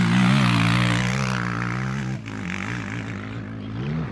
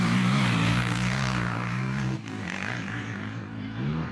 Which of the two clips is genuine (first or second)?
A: first